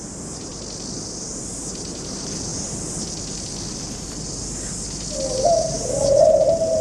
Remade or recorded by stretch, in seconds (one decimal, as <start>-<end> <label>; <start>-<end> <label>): 0.0-0.5 remade; 0.5-1.6 recorded; 1.6-2.5 remade; 2.5-5.3 recorded; 5.3-6.8 remade